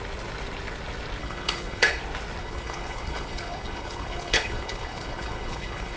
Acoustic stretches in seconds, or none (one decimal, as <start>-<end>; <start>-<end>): 0.0-1.2; 2.0-2.4